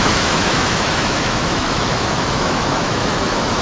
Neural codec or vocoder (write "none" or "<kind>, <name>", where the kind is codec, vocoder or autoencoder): autoencoder, DAC-VAE